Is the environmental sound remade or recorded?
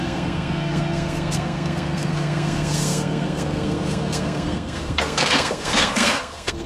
remade